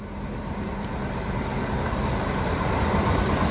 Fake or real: real